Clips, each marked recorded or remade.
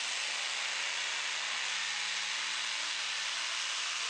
recorded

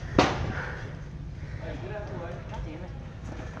recorded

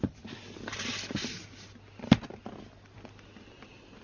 recorded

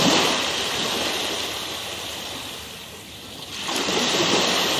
recorded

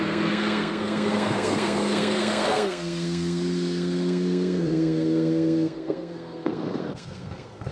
remade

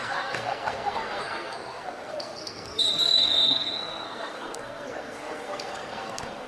remade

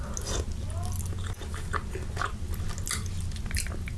recorded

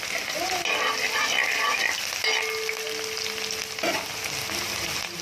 recorded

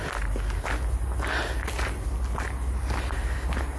recorded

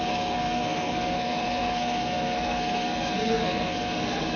remade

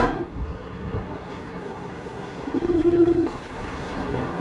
remade